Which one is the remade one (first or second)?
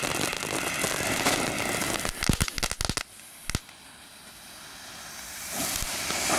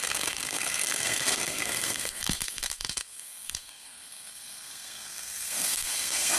second